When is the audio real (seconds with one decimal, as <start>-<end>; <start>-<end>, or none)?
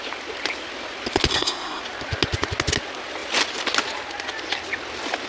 0.0-1.3; 1.8-5.3